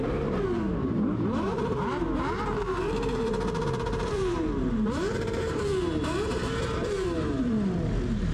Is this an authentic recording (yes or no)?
no